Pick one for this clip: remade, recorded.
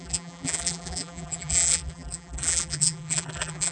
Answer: remade